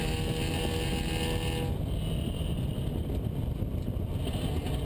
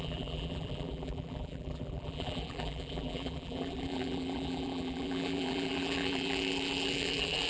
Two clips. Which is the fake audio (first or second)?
second